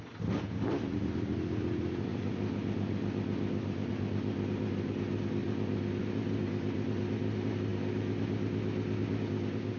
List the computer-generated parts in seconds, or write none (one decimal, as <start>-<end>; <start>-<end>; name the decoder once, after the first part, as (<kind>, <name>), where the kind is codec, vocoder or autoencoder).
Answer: none